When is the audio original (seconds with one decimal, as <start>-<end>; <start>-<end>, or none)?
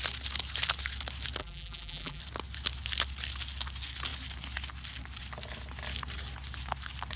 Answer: 0.0-1.4; 2.2-7.2